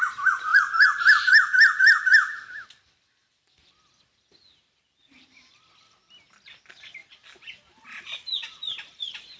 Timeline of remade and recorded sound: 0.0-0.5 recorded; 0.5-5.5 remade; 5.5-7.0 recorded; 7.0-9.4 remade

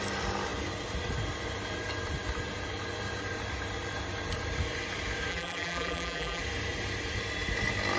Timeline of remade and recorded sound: 0.0-5.3 recorded; 5.3-6.4 remade; 6.4-8.0 recorded